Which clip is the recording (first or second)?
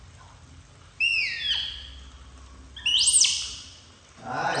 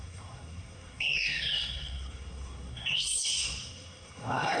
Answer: first